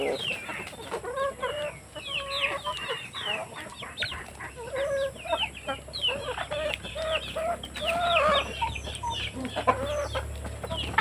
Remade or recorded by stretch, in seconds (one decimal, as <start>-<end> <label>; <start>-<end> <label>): 0.0-11.0 recorded